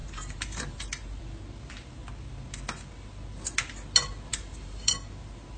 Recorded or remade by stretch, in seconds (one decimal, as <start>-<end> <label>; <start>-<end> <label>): 0.0-1.2 remade; 1.2-4.3 recorded; 4.3-4.9 remade; 4.9-5.6 recorded